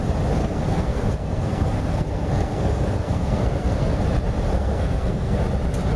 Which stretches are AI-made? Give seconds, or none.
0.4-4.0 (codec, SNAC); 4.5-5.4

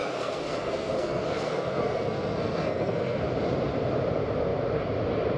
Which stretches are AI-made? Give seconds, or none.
0.0-3.2 (codec, SNAC)

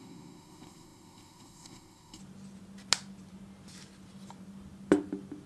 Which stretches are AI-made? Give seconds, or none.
0.0-2.2 (codec, SNAC)

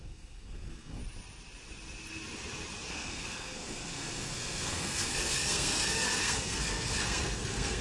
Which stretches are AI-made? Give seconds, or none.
0.0-1.0 (codec, SNAC); 2.9-7.8

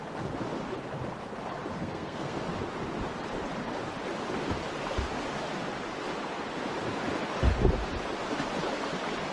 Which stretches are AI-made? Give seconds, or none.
1.8-2.4 (codec, SNAC)

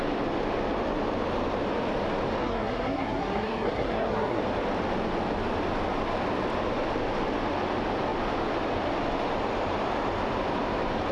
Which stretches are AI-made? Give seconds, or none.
2.4-4.4 (codec, SNAC)